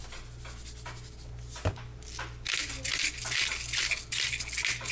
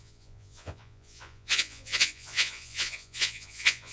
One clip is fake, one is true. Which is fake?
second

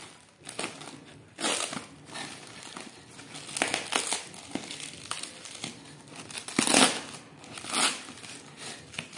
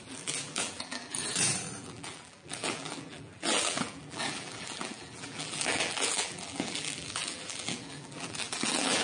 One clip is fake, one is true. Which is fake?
second